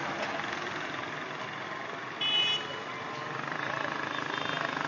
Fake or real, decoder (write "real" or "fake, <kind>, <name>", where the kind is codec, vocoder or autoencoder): real